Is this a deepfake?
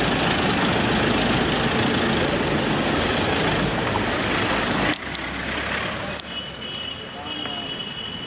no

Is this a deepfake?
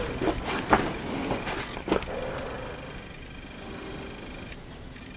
no